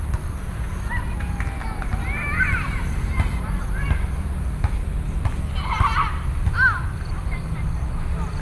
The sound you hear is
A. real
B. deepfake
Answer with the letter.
A